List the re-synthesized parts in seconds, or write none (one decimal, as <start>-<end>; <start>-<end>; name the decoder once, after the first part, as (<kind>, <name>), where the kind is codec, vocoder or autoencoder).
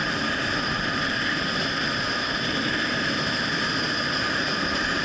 none